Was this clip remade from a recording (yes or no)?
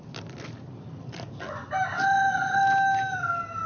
no